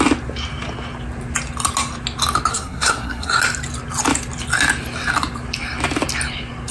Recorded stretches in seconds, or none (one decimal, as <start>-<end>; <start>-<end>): 0.0-2.5; 3.4-6.7